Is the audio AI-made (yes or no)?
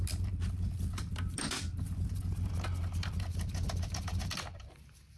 no